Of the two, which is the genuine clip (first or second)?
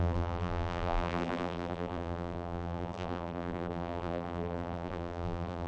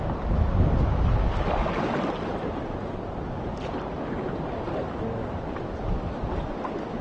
second